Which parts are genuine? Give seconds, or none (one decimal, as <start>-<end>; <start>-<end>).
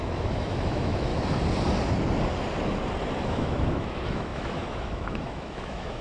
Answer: 1.1-3.2